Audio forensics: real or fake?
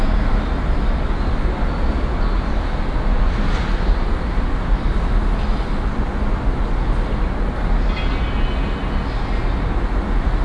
real